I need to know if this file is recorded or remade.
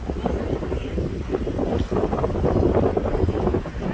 recorded